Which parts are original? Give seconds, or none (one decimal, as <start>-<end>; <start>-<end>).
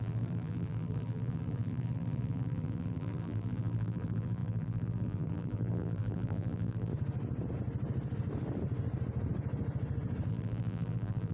6.9-10.3